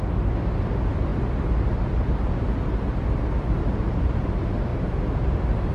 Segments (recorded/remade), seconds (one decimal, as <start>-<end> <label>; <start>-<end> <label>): 0.0-5.7 recorded